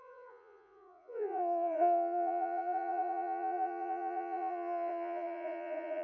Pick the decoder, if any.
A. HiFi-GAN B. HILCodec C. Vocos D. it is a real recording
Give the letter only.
C